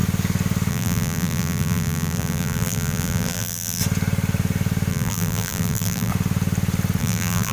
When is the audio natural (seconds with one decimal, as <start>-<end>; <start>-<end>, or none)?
0.0-0.7; 3.8-4.9; 6.1-7.0